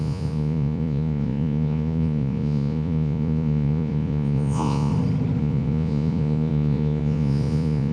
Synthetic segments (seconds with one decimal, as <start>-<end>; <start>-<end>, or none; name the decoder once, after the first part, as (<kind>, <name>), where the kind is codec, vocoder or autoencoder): 0.0-4.9 (vocoder, Vocos); 5.4-7.9